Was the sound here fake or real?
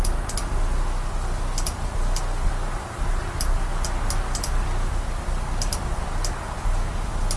real